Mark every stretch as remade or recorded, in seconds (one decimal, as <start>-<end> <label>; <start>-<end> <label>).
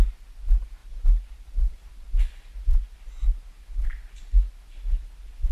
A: 0.0-5.5 recorded